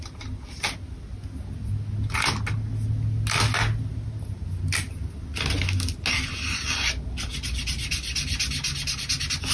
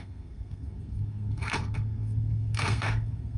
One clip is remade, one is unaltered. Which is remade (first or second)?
second